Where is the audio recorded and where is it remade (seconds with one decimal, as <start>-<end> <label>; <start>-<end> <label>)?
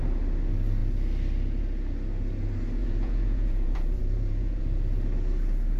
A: 0.0-2.8 recorded; 2.8-4.6 remade; 4.6-5.8 recorded